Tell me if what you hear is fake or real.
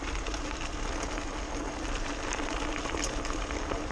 real